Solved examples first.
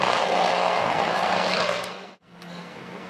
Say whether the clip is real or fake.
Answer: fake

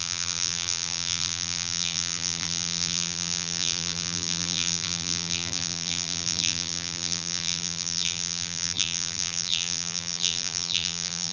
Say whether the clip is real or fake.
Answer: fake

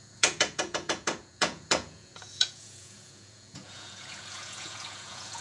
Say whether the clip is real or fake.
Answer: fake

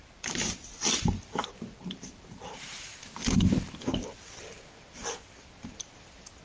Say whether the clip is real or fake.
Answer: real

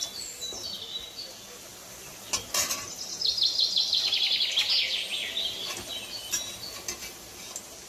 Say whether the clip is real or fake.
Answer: real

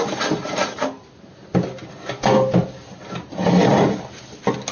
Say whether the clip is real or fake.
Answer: real